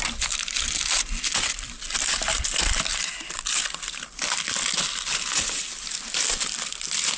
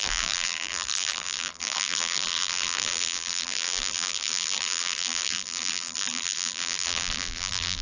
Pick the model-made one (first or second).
second